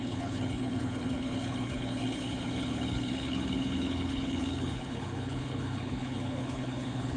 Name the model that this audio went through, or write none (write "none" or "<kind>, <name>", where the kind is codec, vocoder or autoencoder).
codec, HILCodec